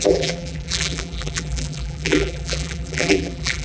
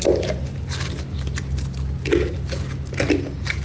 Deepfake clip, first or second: first